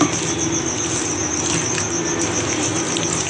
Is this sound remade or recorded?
recorded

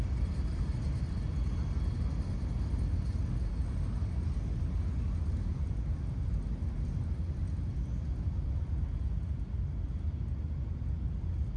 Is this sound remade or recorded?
recorded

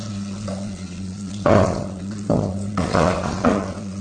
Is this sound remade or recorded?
remade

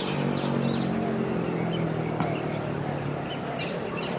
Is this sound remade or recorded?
recorded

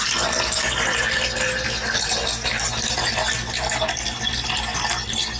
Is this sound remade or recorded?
recorded